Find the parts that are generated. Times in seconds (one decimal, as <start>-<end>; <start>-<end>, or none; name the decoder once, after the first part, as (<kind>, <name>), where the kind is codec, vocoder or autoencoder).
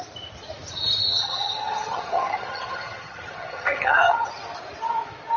1.1-4.3 (vocoder, HiFi-GAN)